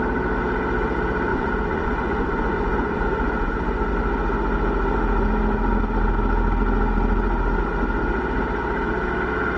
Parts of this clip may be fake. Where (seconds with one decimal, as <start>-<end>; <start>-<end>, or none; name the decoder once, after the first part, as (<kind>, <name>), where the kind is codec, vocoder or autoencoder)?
1.3-3.9 (vocoder, Vocos)